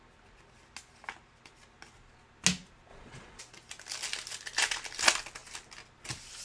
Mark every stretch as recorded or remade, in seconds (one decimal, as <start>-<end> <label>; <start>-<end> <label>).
0.0-2.9 recorded; 2.9-3.4 remade; 3.4-6.4 recorded

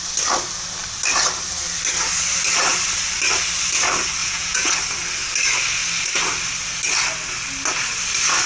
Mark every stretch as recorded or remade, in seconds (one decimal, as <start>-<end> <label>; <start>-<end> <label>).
0.0-4.2 recorded; 4.2-4.7 remade; 4.7-8.5 recorded

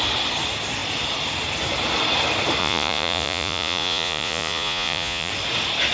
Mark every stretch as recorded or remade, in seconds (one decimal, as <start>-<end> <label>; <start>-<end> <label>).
0.0-2.6 recorded; 2.6-5.3 remade; 5.3-5.9 recorded

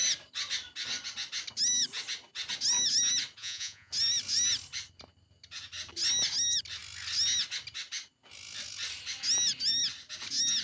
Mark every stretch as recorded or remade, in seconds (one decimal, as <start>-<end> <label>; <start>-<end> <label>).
0.0-3.4 recorded; 3.4-3.9 remade; 3.9-10.6 recorded

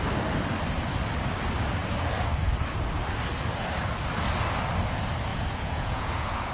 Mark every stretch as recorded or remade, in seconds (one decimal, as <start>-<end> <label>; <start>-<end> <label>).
0.0-5.3 recorded; 5.3-6.5 remade

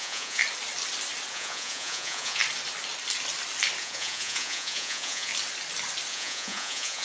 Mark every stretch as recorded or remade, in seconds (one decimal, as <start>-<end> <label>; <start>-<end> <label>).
0.0-0.4 remade; 0.4-1.3 recorded; 1.3-2.4 remade; 2.4-3.8 recorded; 3.8-5.3 remade; 5.3-6.1 recorded; 6.1-7.0 remade

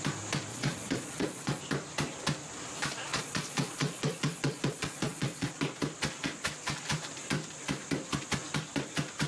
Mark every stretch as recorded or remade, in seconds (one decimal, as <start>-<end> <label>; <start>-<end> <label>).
0.0-0.5 recorded; 0.5-1.6 remade; 1.6-3.1 recorded; 3.1-5.5 remade; 5.5-9.3 recorded

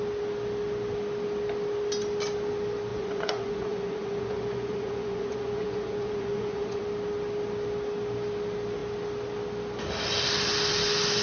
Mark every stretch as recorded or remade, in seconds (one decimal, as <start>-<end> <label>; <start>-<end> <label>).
0.0-2.9 recorded; 2.9-6.8 remade; 6.8-11.2 recorded